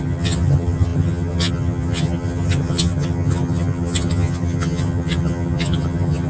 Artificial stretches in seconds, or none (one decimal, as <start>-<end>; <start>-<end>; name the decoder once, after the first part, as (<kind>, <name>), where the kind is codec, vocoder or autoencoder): 0.0-6.3 (vocoder, HiFi-GAN)